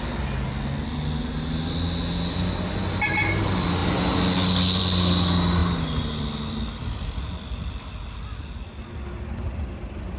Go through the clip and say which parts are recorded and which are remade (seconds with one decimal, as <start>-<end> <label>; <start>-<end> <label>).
0.0-10.2 recorded